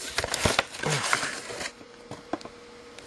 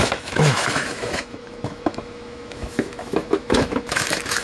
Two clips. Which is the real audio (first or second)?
first